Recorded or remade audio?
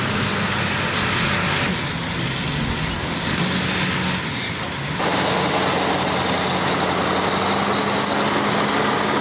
recorded